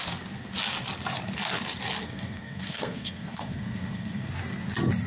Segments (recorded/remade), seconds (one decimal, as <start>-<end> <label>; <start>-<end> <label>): 0.0-2.0 recorded; 2.0-4.3 remade; 4.3-5.1 recorded

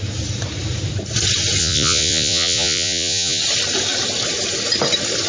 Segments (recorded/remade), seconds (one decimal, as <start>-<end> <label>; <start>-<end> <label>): 0.0-1.6 recorded; 1.6-3.4 remade; 3.4-5.3 recorded

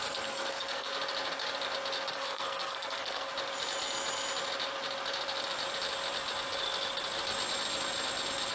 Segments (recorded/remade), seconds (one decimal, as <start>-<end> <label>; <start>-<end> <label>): 0.0-0.9 remade; 0.9-2.1 recorded; 2.1-3.3 remade; 3.3-8.5 recorded

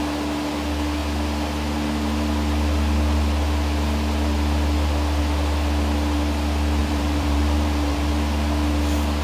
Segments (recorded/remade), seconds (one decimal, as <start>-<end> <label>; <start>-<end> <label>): 0.0-6.8 recorded; 6.8-8.1 remade; 8.1-9.2 recorded

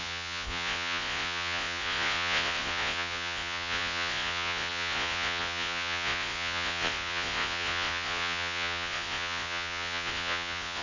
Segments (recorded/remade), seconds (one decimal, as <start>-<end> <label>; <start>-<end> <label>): 0.0-10.8 remade